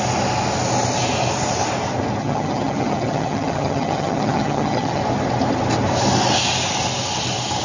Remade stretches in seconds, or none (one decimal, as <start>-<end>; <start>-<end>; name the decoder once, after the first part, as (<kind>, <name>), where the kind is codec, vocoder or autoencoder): 2.2-5.0 (vocoder, HiFi-GAN)